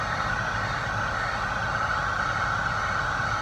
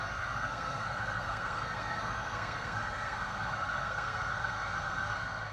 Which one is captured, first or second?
first